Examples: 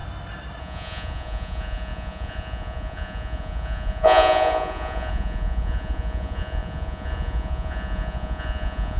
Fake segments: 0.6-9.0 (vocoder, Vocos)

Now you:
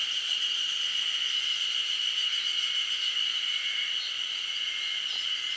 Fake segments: 0.0-0.7 (vocoder, Vocos)